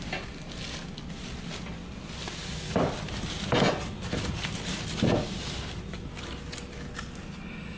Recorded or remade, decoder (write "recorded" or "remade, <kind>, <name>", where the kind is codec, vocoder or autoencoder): recorded